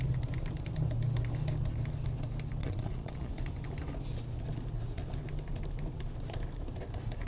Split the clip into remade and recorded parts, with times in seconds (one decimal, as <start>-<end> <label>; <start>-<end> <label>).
0.0-2.6 recorded; 2.6-3.3 remade; 3.3-7.3 recorded